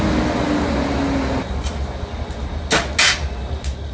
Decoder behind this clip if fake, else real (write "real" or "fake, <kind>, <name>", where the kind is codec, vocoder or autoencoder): real